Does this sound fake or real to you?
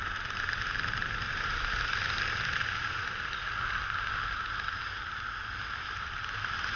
real